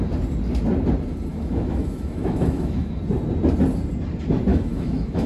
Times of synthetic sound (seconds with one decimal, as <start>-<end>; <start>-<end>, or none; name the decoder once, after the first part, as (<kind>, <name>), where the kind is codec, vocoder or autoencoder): 1.3-3.0 (autoencoder, DAC-VAE); 4.5-5.3